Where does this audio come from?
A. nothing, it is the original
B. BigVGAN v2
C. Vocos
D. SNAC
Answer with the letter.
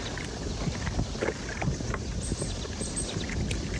A